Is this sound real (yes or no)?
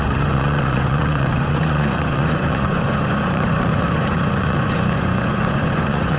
no